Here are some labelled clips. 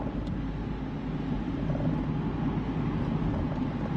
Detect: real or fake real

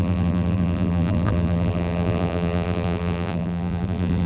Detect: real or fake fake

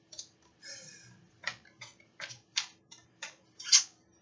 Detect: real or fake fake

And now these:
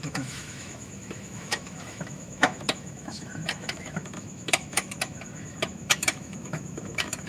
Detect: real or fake fake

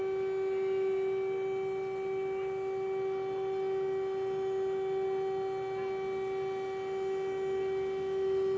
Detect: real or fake real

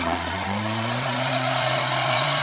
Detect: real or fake fake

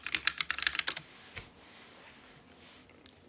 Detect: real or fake real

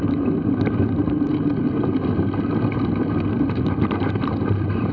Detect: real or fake real